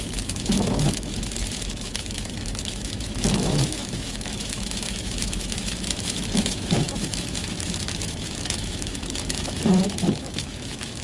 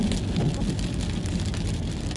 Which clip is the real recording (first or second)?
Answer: second